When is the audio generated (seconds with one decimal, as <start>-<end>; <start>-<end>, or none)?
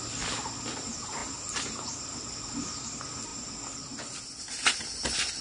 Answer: none